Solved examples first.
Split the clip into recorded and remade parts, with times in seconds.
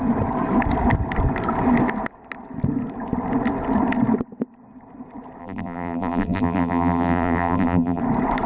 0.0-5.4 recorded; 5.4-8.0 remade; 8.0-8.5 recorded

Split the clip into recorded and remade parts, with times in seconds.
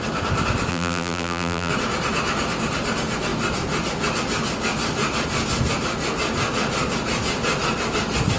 0.0-0.7 recorded; 0.7-1.7 remade; 1.7-8.4 recorded